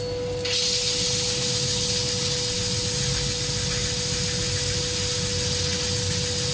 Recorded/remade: recorded